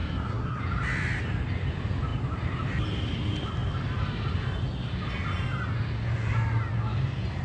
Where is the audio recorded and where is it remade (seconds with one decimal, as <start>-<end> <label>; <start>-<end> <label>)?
0.0-0.6 remade; 0.6-7.4 recorded